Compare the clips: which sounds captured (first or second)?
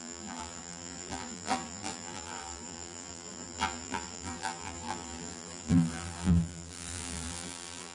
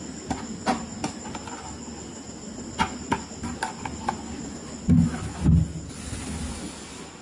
second